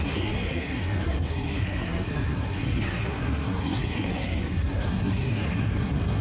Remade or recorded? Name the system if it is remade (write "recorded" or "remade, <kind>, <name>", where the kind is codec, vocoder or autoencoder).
remade, codec, SNAC